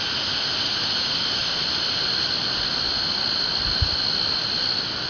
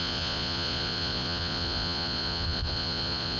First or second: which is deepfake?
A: second